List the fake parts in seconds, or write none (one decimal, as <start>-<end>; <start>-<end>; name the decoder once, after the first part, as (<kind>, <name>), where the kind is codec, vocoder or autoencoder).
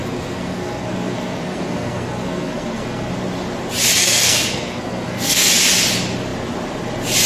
0.0-3.1 (codec, SNAC); 4.0-5.5